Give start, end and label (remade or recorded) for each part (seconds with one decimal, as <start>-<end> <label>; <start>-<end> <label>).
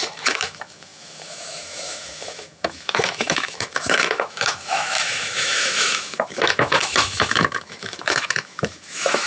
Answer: 0.0-9.3 remade